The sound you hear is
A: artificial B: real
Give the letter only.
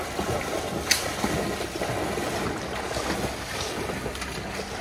B